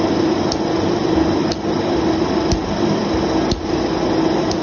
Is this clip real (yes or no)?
yes